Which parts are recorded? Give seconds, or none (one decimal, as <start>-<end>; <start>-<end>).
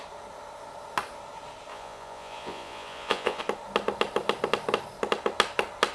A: 0.0-1.7; 3.4-5.9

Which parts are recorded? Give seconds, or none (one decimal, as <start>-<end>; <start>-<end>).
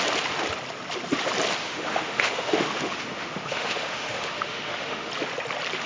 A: 0.0-1.6; 5.1-5.9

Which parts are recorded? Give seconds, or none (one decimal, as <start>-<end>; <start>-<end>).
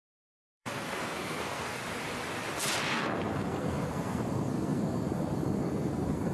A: 1.8-2.8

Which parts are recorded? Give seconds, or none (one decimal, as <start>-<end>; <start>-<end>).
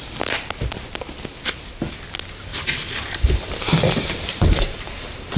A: 0.0-2.5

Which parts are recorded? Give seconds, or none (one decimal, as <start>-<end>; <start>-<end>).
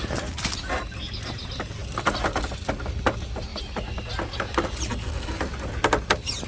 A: 0.0-1.8; 2.5-6.5